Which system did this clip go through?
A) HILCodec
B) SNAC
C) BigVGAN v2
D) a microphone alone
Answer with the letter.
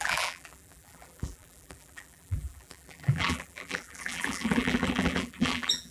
C